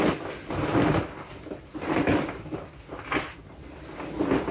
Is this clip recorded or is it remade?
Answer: recorded